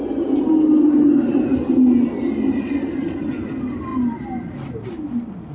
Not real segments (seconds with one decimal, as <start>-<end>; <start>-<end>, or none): none